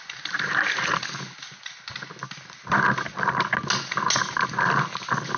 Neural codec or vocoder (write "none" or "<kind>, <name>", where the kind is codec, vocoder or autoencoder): none